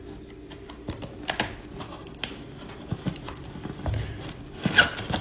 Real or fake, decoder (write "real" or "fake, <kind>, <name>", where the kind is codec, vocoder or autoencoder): real